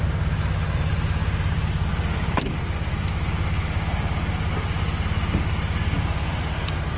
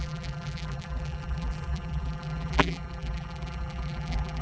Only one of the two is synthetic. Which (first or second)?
second